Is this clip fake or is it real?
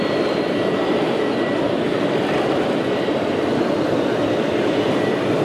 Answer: fake